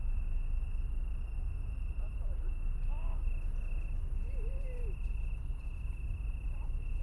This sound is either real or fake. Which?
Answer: real